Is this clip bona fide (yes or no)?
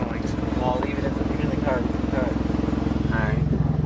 yes